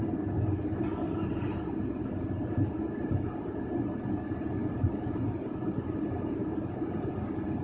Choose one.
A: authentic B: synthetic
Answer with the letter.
A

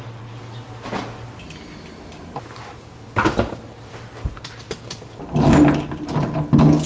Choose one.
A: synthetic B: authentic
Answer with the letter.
B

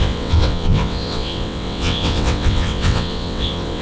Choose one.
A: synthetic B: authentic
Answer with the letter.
A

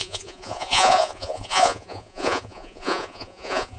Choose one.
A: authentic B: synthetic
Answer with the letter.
B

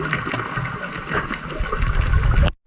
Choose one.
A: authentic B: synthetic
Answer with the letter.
A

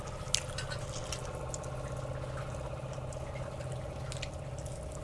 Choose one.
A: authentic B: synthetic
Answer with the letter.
A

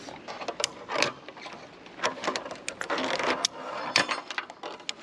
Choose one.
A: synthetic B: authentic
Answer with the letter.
B